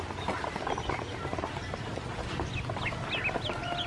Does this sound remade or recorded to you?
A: recorded